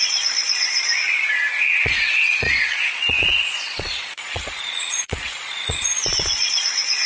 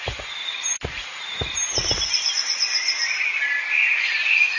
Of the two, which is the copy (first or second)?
first